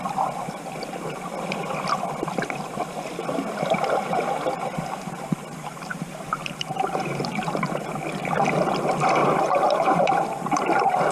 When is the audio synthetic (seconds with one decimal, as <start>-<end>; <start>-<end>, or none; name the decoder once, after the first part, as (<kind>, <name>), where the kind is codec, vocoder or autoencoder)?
5.9-7.2 (vocoder, BigVGAN v2); 9.2-10.2